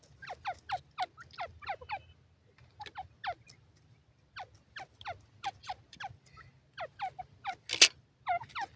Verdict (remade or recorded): recorded